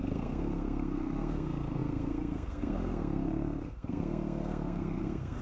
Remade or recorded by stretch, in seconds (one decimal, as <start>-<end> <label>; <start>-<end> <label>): 0.0-5.4 remade